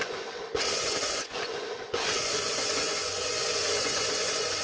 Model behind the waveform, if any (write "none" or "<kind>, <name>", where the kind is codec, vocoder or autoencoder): vocoder, Vocos